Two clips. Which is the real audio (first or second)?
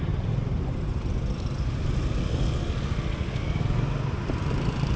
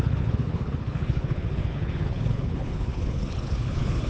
first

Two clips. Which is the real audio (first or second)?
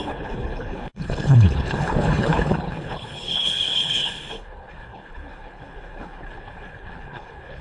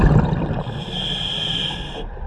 second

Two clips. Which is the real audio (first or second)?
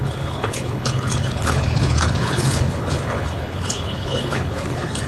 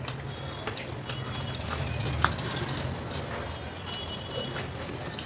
second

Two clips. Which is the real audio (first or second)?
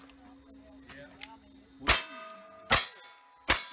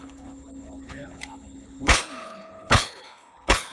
first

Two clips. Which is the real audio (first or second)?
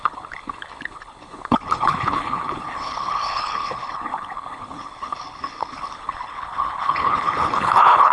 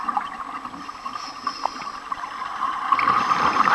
second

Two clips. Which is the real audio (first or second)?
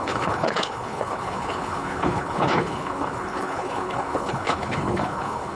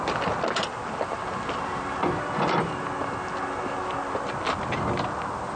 second